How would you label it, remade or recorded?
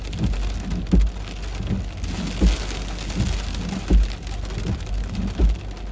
recorded